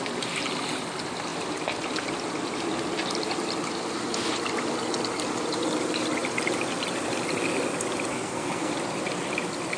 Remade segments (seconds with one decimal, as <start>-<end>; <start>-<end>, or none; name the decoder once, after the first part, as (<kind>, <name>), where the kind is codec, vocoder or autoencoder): 8.1-8.7 (codec, SNAC)